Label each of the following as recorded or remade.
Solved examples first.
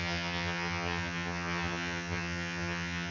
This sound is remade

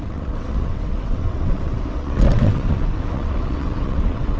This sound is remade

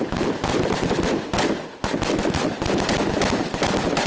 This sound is recorded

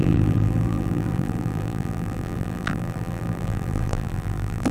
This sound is remade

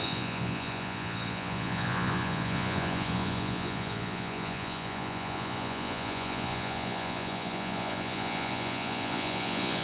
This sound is remade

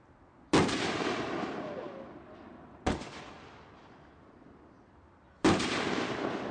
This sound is recorded